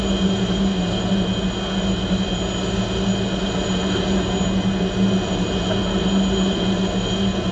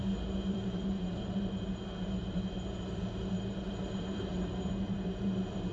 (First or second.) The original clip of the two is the first